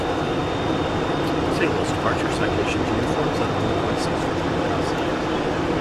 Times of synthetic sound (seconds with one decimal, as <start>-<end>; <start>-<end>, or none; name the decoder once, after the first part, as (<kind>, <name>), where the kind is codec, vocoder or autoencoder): none